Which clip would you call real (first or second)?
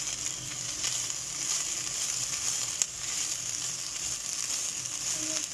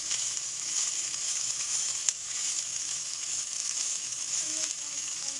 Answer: first